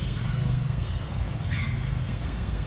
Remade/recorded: remade